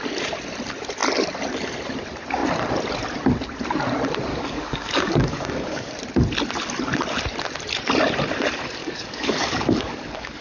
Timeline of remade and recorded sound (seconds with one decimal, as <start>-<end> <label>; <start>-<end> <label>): 0.0-4.3 recorded; 4.3-5.9 remade; 5.9-8.8 recorded; 8.8-10.4 remade